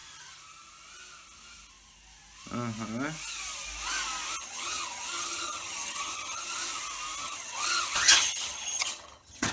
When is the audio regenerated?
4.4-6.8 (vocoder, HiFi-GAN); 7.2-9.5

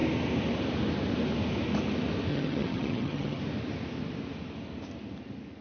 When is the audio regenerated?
2.3-3.4 (vocoder, HiFi-GAN)

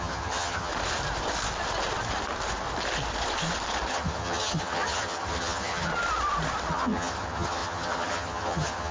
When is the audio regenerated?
0.0-0.7 (vocoder, HiFi-GAN); 3.9-5.9; 6.7-8.9

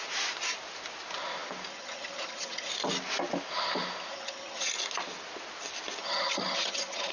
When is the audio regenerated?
1.7-2.7 (vocoder, HiFi-GAN); 4.1-4.7; 6.0-7.1

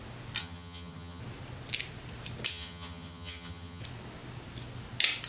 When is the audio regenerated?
0.4-1.2 (vocoder, HiFi-GAN); 2.5-3.8

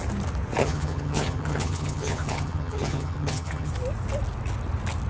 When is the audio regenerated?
0.6-3.7 (vocoder, HiFi-GAN)

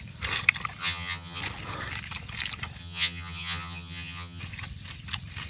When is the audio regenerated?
0.8-1.4 (vocoder, HiFi-GAN); 2.8-4.4

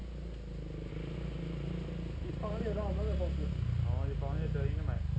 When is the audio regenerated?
none